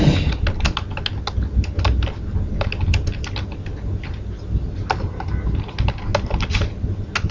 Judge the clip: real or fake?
real